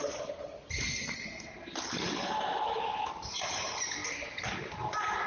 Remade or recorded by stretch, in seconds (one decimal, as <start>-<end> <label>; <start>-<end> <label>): 0.0-2.5 recorded; 2.5-3.1 remade; 3.1-5.3 recorded